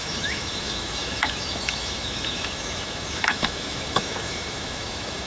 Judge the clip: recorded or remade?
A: remade